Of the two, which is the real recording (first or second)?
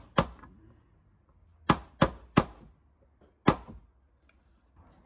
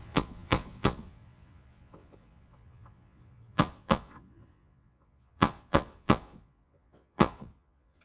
first